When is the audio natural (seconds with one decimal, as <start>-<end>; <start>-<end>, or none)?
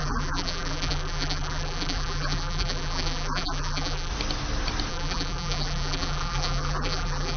4.1-4.9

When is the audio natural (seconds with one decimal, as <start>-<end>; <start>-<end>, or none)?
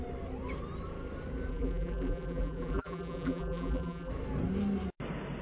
0.0-1.5; 4.1-5.4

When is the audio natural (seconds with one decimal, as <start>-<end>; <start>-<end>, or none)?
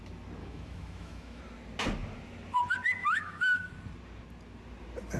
0.0-0.4; 1.4-3.0; 3.7-5.2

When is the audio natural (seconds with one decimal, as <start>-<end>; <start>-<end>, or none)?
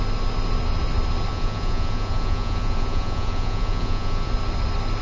0.0-1.3; 4.3-5.0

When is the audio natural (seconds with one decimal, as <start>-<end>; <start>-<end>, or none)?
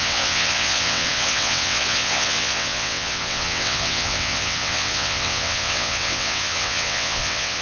none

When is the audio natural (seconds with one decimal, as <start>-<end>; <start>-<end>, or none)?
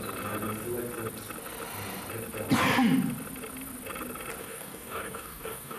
0.0-4.4